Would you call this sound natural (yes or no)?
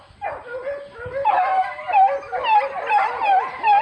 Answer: yes